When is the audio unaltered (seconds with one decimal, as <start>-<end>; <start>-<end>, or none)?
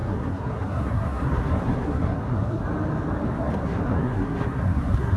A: 2.6-3.4